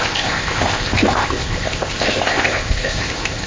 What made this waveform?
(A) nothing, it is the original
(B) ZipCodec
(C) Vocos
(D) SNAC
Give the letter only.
B